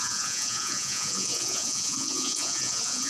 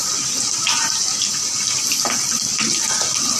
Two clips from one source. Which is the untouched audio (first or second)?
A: second